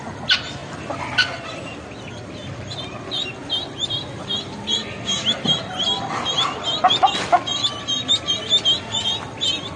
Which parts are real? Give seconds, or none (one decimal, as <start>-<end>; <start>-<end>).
0.0-9.8